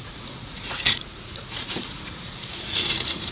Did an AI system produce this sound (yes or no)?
yes